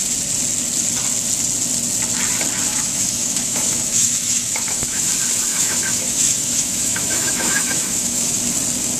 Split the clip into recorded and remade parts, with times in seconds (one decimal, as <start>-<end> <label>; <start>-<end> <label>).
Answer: 0.0-2.7 recorded; 2.7-5.1 remade; 5.1-5.5 recorded; 5.5-8.4 remade; 8.4-9.0 recorded